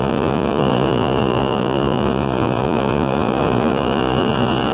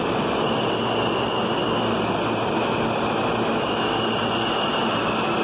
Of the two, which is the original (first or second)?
second